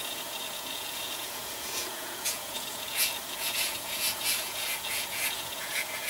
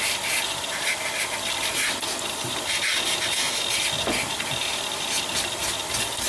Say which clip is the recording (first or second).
second